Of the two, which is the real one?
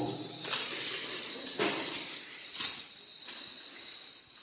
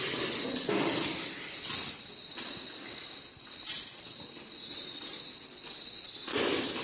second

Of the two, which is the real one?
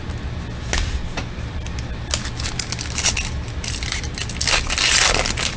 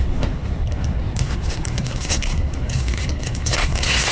first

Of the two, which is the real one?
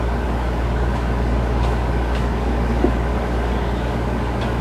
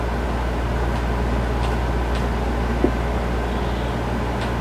second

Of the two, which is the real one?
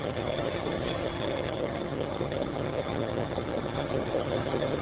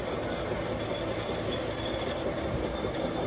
second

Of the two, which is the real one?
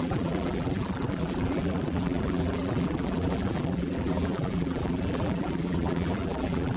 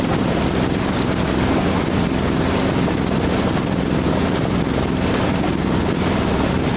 second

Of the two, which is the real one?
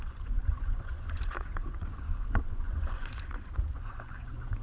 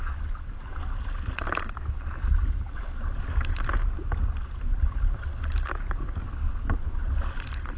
second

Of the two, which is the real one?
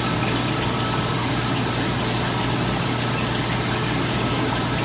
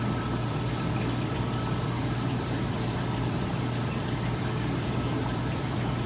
first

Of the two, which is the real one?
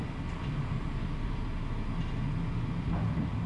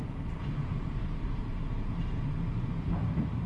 first